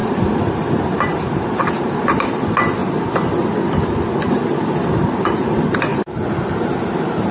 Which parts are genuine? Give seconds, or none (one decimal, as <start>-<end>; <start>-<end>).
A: 2.8-4.3